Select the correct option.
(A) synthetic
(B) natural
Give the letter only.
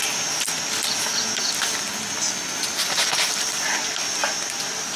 B